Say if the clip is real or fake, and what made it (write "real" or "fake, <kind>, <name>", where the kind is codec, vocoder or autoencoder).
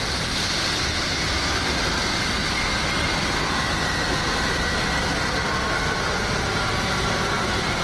real